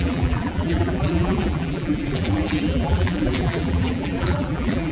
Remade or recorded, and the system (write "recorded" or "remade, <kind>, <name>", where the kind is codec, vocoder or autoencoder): remade, vocoder, BigVGAN v2